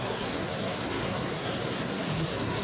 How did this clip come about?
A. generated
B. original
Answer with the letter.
A